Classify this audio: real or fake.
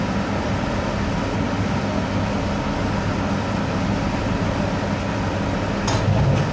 real